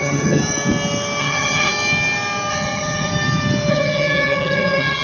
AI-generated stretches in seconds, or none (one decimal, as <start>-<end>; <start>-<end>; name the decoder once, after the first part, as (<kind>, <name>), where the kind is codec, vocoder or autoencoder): 0.0-0.4 (vocoder, HiFi-GAN); 1.2-1.7; 2.5-3.1; 3.7-5.0